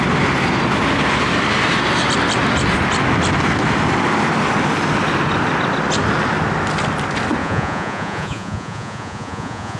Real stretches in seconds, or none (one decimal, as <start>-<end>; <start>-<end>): 0.0-7.4